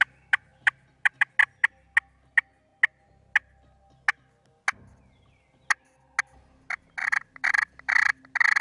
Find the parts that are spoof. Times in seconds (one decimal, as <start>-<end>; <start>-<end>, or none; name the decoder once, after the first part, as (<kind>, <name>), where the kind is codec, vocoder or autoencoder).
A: 0.5-1.1 (vocoder, BigVGAN v2); 7.0-8.2